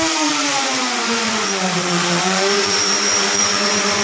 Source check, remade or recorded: remade